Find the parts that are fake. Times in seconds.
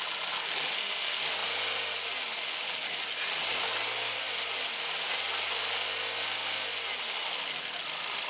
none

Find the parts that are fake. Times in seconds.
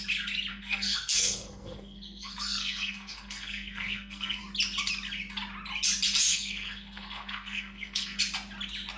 0.5-4.4; 6.3-8.2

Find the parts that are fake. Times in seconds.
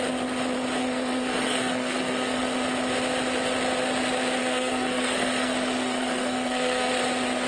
0.8-2.4; 4.4-6.9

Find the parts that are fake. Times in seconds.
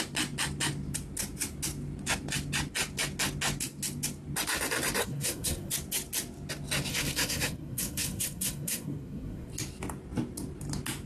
5.0-5.7; 6.9-9.5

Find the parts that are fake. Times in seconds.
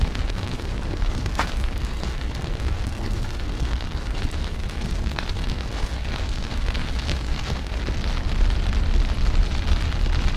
0.0-7.8